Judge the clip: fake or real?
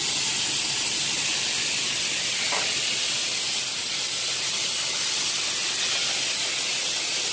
real